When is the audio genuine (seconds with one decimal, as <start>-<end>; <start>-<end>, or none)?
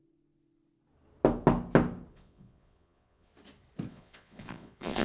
0.0-2.1; 3.3-3.9